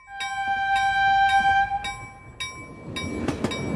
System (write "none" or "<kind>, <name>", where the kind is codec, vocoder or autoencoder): none